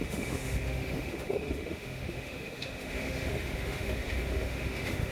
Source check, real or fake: fake